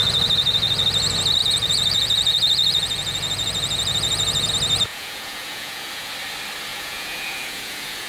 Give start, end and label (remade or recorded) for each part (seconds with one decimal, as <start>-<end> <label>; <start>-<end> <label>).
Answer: 0.0-1.4 recorded; 1.4-4.5 remade; 4.5-4.9 recorded; 4.9-6.1 remade; 6.1-6.7 recorded; 6.7-8.1 remade